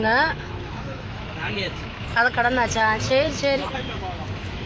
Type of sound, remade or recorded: remade